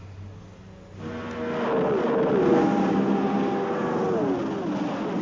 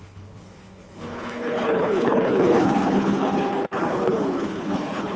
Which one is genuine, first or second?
first